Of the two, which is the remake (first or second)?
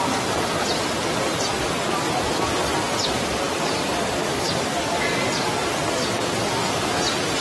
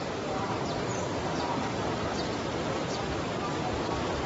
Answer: second